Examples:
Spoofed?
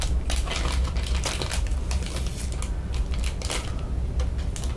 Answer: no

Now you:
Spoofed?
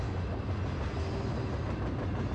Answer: no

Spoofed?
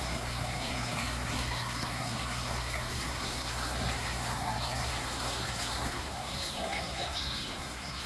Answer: yes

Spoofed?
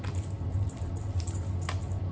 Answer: no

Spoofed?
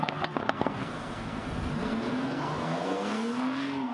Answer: yes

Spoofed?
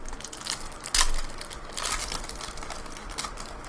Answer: no